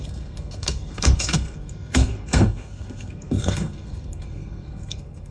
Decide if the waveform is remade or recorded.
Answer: remade